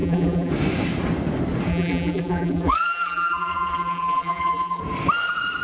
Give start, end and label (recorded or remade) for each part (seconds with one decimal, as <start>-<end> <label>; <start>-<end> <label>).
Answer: 0.0-0.5 remade; 0.5-1.7 recorded; 1.7-4.8 remade; 4.8-5.6 recorded